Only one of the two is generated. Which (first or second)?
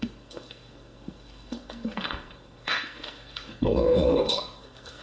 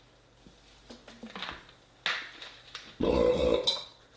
first